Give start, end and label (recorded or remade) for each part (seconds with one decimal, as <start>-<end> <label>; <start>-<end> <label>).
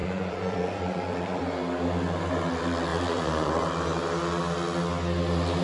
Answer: 0.0-1.4 remade; 1.4-2.9 recorded; 2.9-3.6 remade; 3.6-5.6 recorded